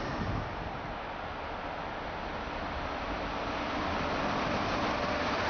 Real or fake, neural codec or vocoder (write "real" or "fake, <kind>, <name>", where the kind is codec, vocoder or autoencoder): real